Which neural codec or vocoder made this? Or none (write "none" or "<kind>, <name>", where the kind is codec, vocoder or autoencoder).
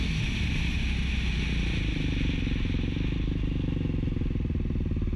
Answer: none